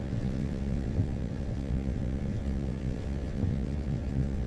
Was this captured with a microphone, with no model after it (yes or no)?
no